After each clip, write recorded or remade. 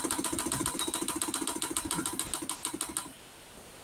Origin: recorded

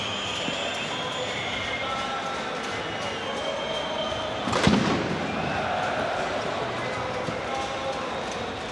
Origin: recorded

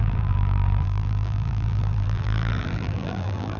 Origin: remade